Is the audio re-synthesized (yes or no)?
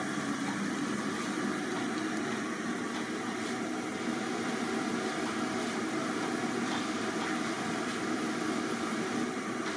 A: no